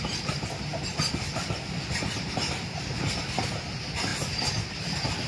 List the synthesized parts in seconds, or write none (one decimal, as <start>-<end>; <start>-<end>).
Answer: none